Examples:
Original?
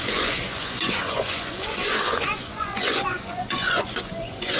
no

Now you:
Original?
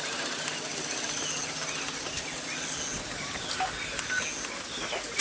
yes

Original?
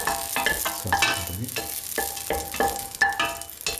yes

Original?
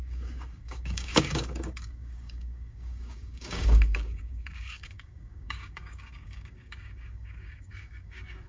no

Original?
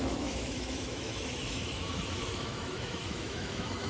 no